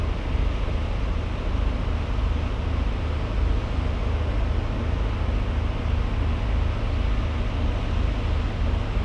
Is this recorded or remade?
recorded